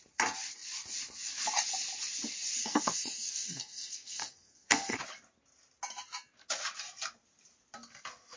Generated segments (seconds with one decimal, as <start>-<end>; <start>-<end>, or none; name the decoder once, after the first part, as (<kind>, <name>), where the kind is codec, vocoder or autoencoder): 2.6-5.0 (codec, SNAC)